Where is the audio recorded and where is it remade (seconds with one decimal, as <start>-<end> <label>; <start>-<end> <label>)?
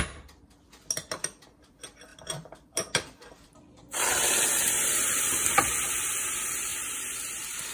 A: 0.0-2.1 recorded; 2.1-5.2 remade; 5.2-6.7 recorded; 6.7-7.7 remade